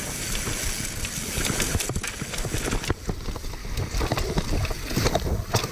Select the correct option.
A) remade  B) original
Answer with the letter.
B